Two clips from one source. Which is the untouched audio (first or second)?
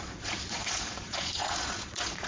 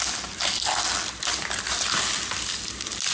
second